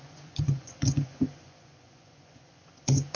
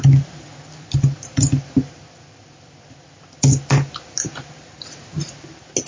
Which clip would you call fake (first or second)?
first